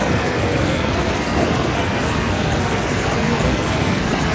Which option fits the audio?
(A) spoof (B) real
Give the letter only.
A